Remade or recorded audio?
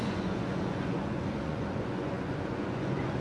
remade